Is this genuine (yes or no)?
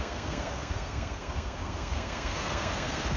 no